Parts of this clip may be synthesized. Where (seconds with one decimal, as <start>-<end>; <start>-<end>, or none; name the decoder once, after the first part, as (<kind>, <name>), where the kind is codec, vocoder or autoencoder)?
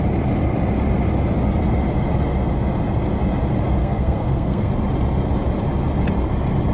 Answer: 3.8-4.7 (codec, SNAC)